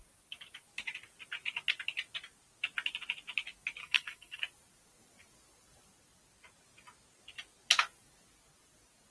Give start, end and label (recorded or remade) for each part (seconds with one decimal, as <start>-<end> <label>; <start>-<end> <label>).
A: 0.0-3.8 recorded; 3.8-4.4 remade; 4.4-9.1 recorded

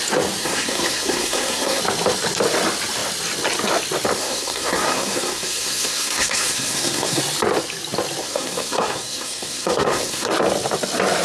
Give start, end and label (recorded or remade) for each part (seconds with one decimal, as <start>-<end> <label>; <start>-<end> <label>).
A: 0.0-0.4 recorded; 0.4-1.8 remade; 1.8-4.2 recorded; 4.2-7.2 remade; 7.2-8.2 recorded; 8.2-10.3 remade; 10.3-11.2 recorded

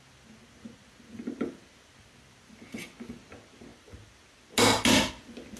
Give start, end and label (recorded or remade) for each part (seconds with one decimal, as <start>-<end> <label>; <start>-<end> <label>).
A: 0.0-5.6 recorded

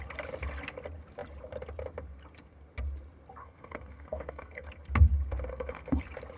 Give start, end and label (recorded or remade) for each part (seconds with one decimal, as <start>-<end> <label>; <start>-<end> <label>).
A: 0.0-3.4 recorded; 3.4-4.7 remade; 4.7-5.5 recorded; 5.5-6.0 remade; 6.0-6.4 recorded

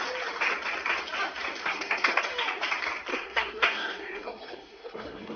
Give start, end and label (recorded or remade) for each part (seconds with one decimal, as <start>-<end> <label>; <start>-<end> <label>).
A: 0.0-1.6 recorded; 1.6-2.2 remade; 2.2-3.1 recorded; 3.1-5.4 remade

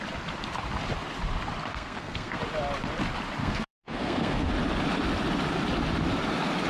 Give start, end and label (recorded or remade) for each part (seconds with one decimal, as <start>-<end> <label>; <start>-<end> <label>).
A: 0.0-1.7 recorded; 1.7-2.4 remade; 2.4-3.4 recorded; 3.4-4.5 remade; 4.5-6.7 recorded

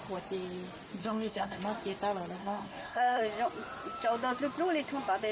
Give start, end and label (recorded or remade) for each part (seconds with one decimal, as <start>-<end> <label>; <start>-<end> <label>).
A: 0.0-1.0 recorded; 1.0-1.6 remade; 1.6-2.4 recorded; 2.4-3.2 remade; 3.2-5.3 recorded

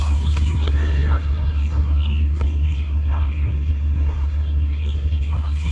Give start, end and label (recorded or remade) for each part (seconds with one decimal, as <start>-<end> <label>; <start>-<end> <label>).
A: 0.0-5.7 remade